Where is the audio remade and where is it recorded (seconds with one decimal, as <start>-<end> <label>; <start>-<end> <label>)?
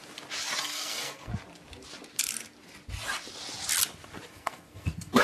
0.0-0.6 recorded; 0.6-1.3 remade; 1.3-4.3 recorded; 4.3-5.2 remade